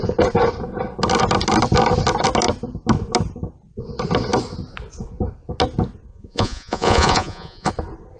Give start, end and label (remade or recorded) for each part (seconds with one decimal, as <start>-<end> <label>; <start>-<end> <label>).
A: 0.0-6.1 recorded; 6.1-7.7 remade; 7.7-8.2 recorded